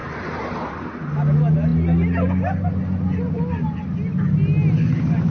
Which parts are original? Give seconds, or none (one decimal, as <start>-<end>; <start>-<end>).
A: 0.7-5.3